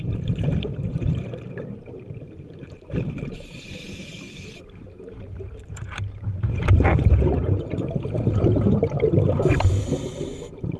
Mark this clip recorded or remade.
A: remade